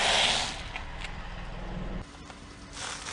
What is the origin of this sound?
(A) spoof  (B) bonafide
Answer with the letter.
B